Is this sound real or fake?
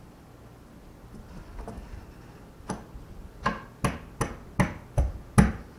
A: real